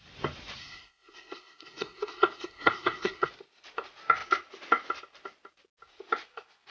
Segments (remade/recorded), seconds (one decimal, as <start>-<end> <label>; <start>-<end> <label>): 0.0-0.6 recorded; 0.6-3.3 remade; 3.3-6.7 recorded